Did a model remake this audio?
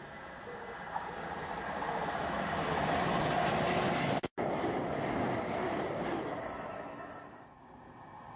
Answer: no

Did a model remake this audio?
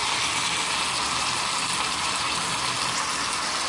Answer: no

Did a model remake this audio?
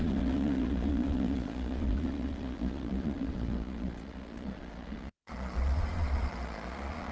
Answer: yes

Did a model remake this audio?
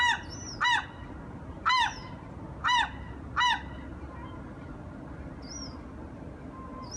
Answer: no